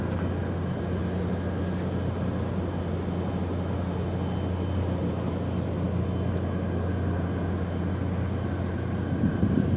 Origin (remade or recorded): recorded